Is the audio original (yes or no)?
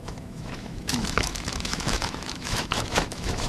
no